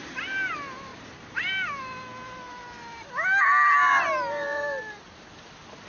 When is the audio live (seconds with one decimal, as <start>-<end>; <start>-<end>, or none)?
0.0-0.9; 1.5-5.9